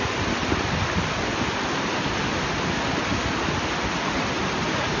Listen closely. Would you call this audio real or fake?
real